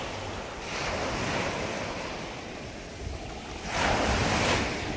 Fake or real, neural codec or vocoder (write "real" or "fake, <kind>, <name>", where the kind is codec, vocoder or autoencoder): real